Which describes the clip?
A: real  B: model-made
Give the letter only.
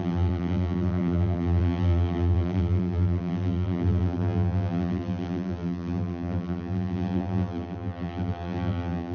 B